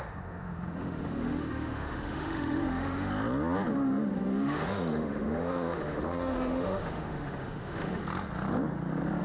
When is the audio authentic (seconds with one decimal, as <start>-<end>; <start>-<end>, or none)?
3.1-3.7; 8.0-9.2